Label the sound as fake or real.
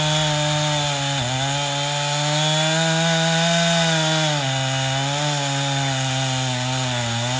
real